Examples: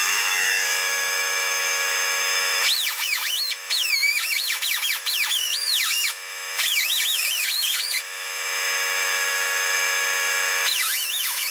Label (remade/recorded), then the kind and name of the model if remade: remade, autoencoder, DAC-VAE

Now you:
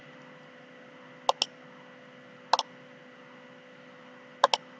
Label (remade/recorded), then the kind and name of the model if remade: recorded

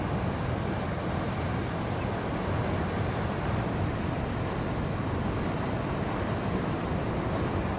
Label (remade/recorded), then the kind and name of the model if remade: recorded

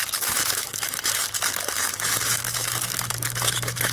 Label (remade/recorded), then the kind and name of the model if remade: remade, autoencoder, DAC-VAE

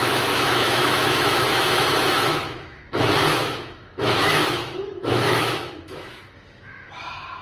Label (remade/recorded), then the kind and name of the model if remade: remade, autoencoder, DAC-VAE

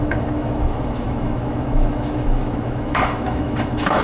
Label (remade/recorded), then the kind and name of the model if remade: remade, autoencoder, DAC-VAE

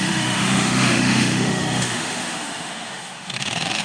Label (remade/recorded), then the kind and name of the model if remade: remade, autoencoder, DAC-VAE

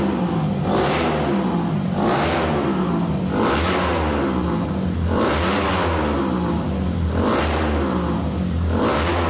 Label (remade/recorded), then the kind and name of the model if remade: recorded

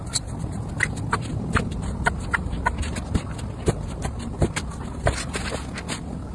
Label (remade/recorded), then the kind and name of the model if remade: recorded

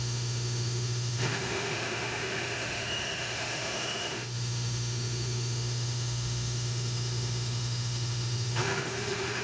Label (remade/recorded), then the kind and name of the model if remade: remade, autoencoder, DAC-VAE